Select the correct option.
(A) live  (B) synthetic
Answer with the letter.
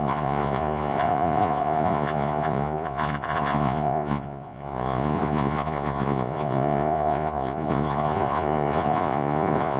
B